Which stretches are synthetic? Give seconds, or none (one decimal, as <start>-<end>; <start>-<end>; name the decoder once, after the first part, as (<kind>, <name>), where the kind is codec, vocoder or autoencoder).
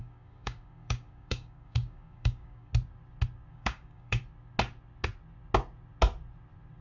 0.0-2.7 (codec, DAC); 3.5-4.2